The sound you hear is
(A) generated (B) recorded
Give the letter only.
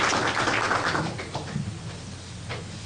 B